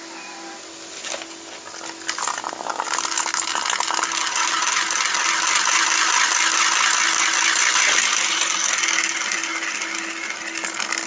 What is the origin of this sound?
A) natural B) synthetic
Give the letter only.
A